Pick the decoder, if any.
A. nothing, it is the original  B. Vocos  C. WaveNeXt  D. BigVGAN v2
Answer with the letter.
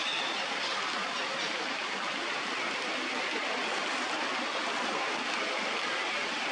A